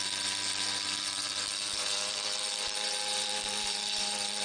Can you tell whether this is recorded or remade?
remade